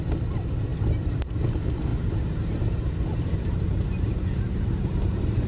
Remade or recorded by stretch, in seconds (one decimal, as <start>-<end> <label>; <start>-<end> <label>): 0.0-5.5 recorded